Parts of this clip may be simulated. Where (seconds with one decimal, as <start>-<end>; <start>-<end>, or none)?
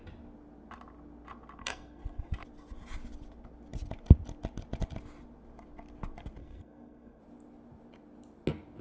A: 1.6-2.3; 6.4-7.2